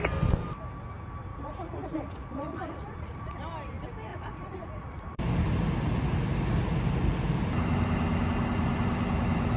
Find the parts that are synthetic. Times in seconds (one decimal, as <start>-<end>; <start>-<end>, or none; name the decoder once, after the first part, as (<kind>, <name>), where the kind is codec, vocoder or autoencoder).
1.3-3.4 (vocoder, Vocos); 4.1-5.2